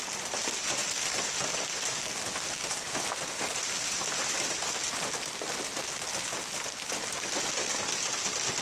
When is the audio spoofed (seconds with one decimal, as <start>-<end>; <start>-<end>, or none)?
none

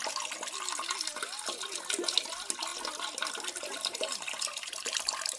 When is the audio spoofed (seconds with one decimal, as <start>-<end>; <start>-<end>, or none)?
none